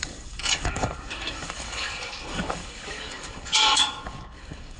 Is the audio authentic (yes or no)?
no